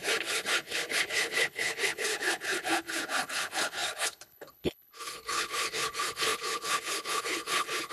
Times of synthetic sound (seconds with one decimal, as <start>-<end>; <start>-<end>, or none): 0.0-7.9